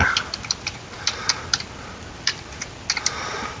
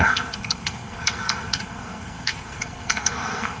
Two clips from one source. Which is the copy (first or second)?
second